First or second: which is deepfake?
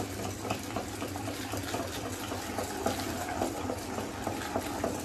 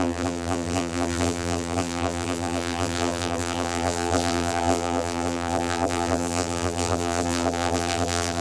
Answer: second